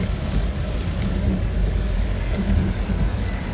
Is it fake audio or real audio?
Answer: fake